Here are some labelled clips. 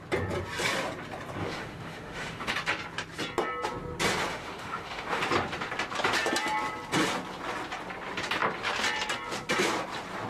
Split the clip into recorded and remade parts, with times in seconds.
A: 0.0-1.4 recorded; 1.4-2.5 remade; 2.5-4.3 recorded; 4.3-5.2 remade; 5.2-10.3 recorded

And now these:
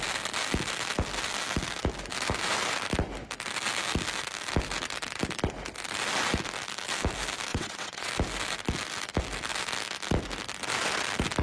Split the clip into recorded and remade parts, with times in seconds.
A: 0.0-7.5 recorded; 7.5-8.1 remade; 8.1-11.4 recorded

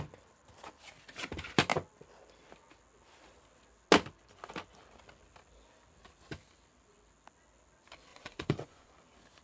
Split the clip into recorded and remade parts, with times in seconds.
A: 0.0-8.1 recorded; 8.1-8.9 remade; 8.9-9.4 recorded

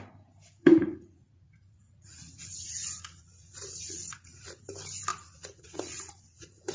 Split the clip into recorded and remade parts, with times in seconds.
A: 0.0-0.6 recorded; 0.6-4.6 remade; 4.6-5.1 recorded; 5.1-6.7 remade

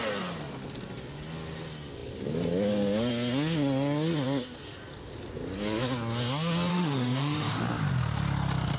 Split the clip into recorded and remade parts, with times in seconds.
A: 0.0-6.7 recorded; 6.7-7.6 remade; 7.6-8.8 recorded

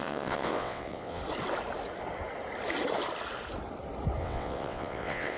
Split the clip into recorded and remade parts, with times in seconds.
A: 0.0-1.2 remade; 1.2-4.2 recorded; 4.2-5.4 remade

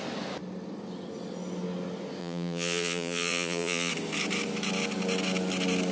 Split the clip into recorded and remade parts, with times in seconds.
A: 0.0-2.2 recorded; 2.2-3.9 remade; 3.9-5.9 recorded